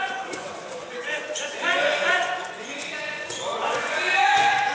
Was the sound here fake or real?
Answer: fake